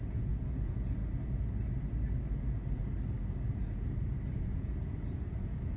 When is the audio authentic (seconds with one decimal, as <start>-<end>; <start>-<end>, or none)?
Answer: 1.0-4.4

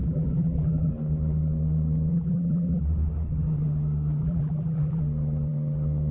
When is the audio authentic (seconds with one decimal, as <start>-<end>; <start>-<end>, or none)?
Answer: 0.9-2.1; 2.8-4.2; 5.0-6.1

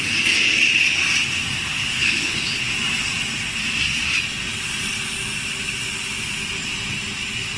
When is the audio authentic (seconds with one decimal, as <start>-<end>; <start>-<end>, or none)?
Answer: 0.0-1.7; 2.7-7.6

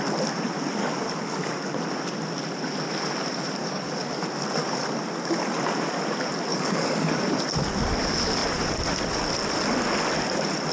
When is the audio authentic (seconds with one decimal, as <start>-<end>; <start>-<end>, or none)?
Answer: 0.0-0.8; 1.5-3.6; 4.2-6.5; 7.4-10.7

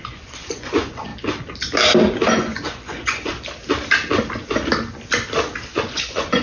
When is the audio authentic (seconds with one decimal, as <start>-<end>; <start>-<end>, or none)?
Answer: 1.1-2.3; 3.3-5.7

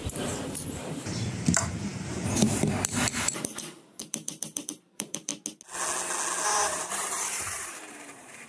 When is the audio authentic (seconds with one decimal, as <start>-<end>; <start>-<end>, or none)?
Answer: 5.3-6.5

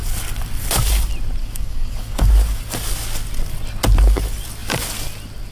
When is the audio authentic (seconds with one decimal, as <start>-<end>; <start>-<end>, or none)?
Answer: 0.0-1.4; 2.3-5.5